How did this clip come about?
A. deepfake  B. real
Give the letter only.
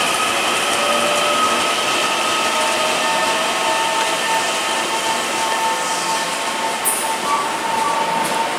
B